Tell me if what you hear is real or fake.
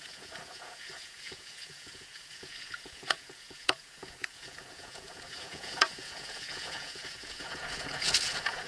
fake